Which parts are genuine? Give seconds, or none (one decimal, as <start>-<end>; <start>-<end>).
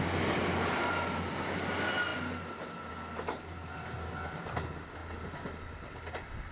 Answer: 0.0-6.5